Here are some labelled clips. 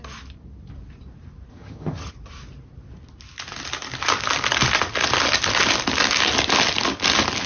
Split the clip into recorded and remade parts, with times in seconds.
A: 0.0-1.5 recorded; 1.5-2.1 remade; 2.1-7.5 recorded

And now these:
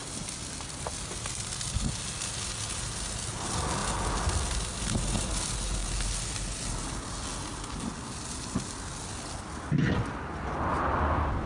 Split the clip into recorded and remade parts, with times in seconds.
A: 0.0-11.5 recorded

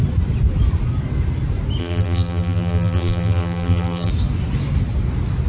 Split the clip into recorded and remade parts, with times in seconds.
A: 0.0-1.8 recorded; 1.8-4.1 remade; 4.1-5.5 recorded

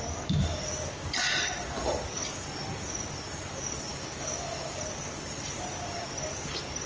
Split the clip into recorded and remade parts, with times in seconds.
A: 0.0-3.9 recorded; 3.9-4.8 remade; 4.8-6.9 recorded

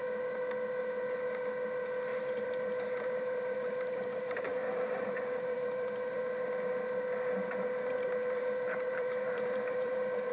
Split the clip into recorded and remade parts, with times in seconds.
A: 0.0-2.1 recorded; 2.1-6.2 remade; 6.2-8.2 recorded; 8.2-10.3 remade

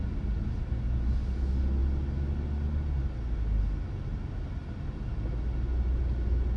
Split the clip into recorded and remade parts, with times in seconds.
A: 0.0-6.6 recorded

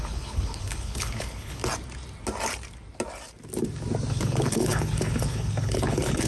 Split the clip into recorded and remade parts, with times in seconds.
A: 0.0-1.6 remade; 1.6-4.1 recorded; 4.1-6.3 remade